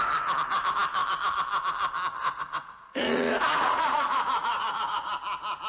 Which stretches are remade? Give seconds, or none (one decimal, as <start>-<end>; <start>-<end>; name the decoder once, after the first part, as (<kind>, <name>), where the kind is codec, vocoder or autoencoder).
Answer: 2.2-5.1 (vocoder, Vocos)